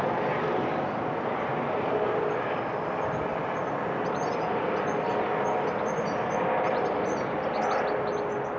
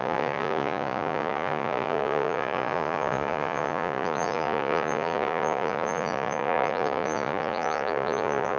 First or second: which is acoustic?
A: first